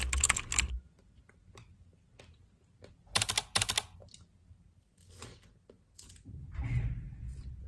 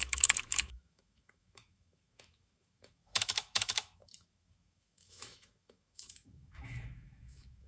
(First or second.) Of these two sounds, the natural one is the first